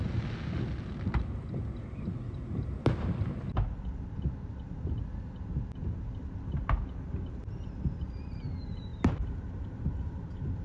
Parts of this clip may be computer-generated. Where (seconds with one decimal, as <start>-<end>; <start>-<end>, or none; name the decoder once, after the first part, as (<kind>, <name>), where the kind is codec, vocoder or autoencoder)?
none